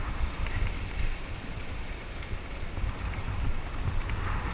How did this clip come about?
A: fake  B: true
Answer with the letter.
B